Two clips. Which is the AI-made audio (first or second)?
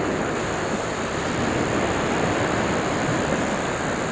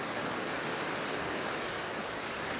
second